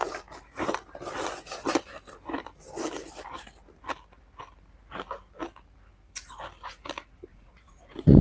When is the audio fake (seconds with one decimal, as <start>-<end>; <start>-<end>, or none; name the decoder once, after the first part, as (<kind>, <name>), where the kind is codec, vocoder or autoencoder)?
7.3-8.2 (vocoder, Vocos)

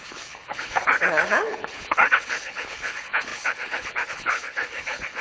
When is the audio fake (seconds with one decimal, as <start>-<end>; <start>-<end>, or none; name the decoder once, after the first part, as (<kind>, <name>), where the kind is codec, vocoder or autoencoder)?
0.0-5.2 (codec, HILCodec)

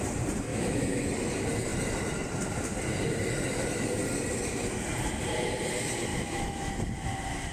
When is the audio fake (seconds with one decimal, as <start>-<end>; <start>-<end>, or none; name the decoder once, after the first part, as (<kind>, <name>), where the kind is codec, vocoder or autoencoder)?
0.5-1.1 (autoencoder, DAC-VAE); 6.1-6.7